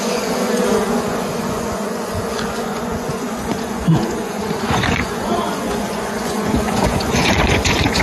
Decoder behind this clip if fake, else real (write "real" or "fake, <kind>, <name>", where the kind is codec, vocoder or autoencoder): fake, vocoder, Vocos